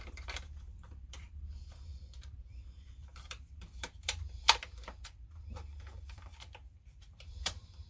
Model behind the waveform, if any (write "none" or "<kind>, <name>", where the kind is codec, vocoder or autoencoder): vocoder, BigVGAN v2